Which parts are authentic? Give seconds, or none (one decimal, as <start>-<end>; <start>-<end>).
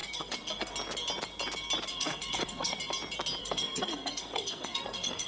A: 0.7-1.9; 2.8-3.4